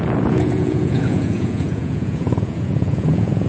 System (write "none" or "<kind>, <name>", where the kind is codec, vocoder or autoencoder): vocoder, Vocos